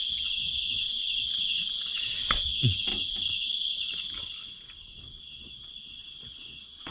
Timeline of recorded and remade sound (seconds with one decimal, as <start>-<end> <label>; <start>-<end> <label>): 0.0-2.9 remade; 2.9-5.2 recorded; 5.2-6.9 remade